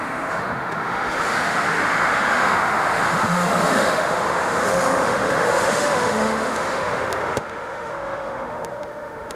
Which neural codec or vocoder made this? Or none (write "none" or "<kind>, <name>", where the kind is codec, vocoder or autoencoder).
autoencoder, DAC-VAE